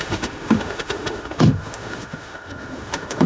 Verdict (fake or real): fake